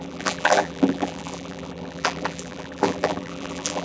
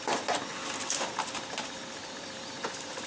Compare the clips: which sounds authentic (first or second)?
second